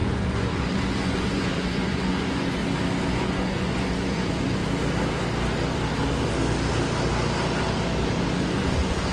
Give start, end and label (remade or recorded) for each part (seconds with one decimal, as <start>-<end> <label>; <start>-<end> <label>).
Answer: 0.0-2.6 remade; 2.6-3.1 recorded; 3.1-4.6 remade; 4.6-8.4 recorded; 8.4-9.1 remade